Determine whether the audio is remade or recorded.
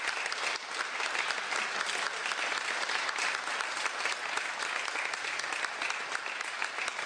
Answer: recorded